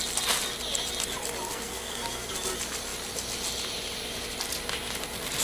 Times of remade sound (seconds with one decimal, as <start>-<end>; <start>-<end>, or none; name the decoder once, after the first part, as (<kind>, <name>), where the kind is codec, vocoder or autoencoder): 1.5-2.3 (codec, SNAC)